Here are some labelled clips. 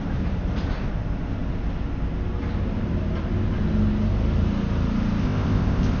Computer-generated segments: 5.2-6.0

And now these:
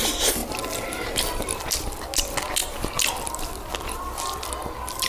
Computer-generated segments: none

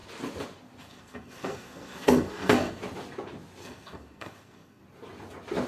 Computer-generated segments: 0.8-2.8; 3.6-4.8

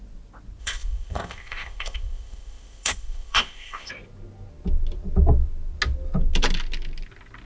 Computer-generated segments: 0.6-3.9

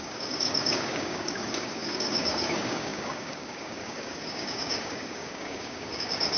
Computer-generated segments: 0.0-6.4

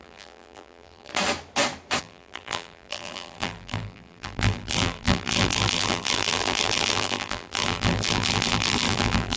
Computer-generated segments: 0.0-1.1; 2.0-9.4

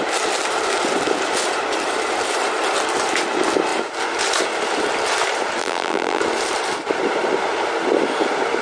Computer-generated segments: 5.6-6.2